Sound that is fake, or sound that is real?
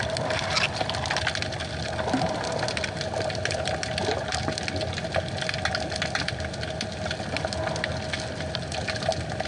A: real